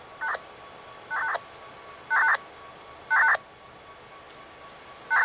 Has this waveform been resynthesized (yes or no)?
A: no